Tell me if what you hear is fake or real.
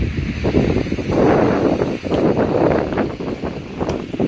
real